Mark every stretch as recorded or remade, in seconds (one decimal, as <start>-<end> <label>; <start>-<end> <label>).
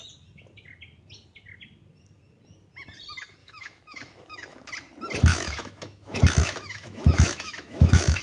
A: 0.0-3.4 recorded; 3.4-4.7 remade; 4.7-5.3 recorded; 5.3-8.2 remade